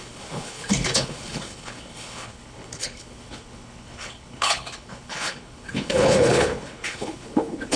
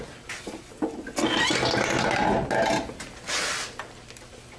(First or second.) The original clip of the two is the second